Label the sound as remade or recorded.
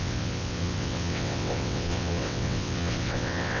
remade